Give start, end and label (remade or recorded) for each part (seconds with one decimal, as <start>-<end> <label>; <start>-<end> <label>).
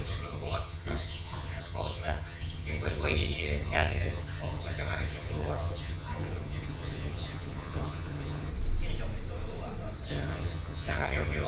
0.0-8.5 remade; 8.5-10.1 recorded; 10.1-11.5 remade